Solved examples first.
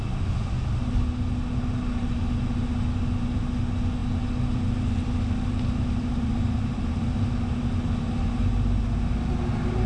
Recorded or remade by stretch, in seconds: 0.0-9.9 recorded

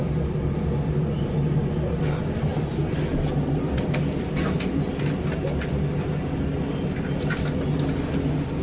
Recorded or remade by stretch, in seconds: 0.0-8.6 recorded

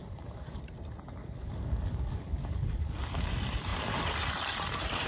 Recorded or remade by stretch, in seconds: 0.0-0.6 remade; 0.6-1.2 recorded; 1.2-3.0 remade; 3.0-5.1 recorded

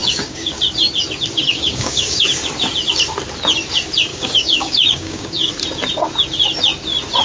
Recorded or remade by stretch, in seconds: 0.0-0.6 remade; 0.6-1.5 recorded; 1.5-2.2 remade; 2.2-4.1 recorded; 4.1-5.5 remade; 5.5-7.2 recorded

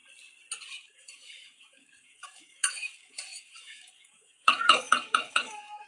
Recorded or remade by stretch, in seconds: 0.0-0.8 recorded; 0.8-5.9 remade

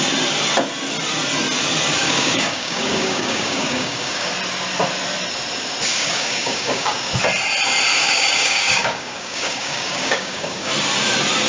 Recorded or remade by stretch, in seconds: 0.0-2.0 recorded; 2.0-4.3 remade; 4.3-5.9 recorded; 5.9-7.1 remade; 7.1-7.9 recorded; 7.9-10.7 remade; 10.7-11.5 recorded